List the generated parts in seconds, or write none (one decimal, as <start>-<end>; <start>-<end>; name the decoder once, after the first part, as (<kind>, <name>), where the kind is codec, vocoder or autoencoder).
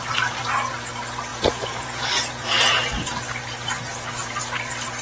1.3-2.9 (vocoder, Vocos)